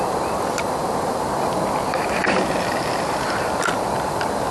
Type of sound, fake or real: real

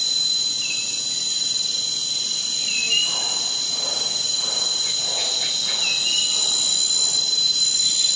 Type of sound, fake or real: real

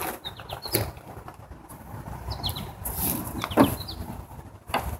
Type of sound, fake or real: real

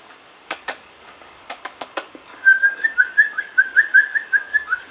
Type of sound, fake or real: fake